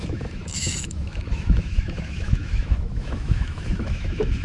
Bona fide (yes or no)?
no